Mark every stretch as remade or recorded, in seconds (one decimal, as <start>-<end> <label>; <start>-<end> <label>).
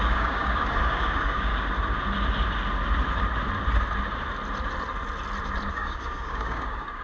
0.0-1.5 remade; 1.5-5.7 recorded; 5.7-7.0 remade